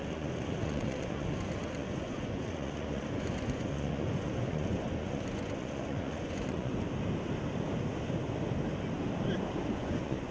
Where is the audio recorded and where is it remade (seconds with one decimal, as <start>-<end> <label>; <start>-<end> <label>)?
0.0-6.7 remade; 6.7-9.7 recorded; 9.7-10.3 remade

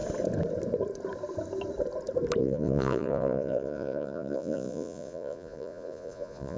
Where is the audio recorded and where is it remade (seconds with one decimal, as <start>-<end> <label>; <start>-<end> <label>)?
0.0-2.4 recorded; 2.4-6.6 remade